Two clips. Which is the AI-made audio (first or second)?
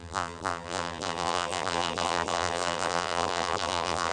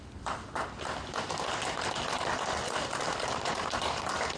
first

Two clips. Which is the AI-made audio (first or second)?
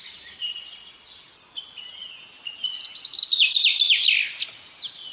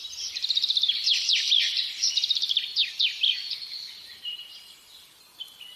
second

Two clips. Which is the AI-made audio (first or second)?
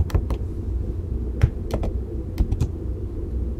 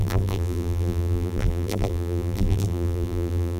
second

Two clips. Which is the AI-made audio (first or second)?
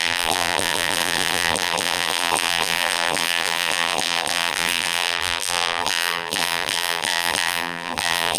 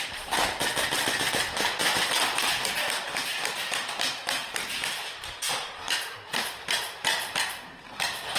first